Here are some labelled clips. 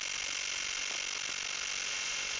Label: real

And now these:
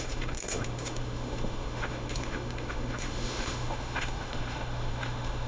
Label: fake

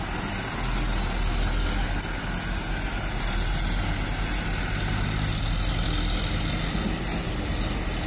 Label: real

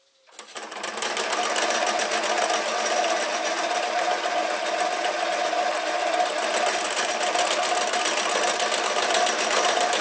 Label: real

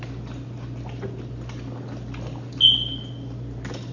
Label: real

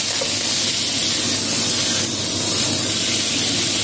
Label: real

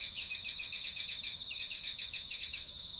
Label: fake